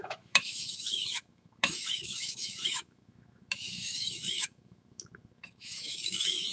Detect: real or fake fake